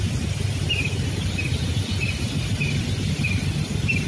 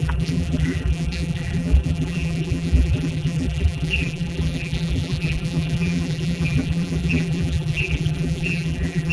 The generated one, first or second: second